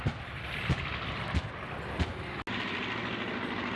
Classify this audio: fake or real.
real